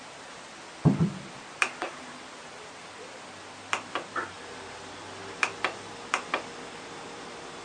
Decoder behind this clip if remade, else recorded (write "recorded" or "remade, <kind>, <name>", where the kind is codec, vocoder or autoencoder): recorded